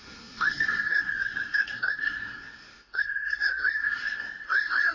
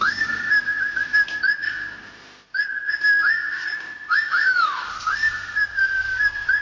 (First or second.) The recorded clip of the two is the second